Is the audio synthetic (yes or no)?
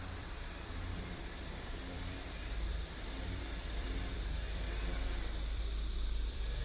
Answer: yes